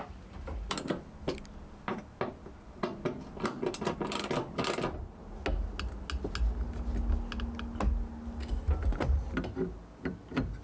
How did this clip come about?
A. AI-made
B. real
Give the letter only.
B